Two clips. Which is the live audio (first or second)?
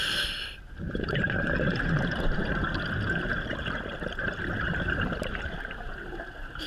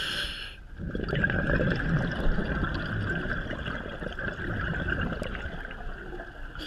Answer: second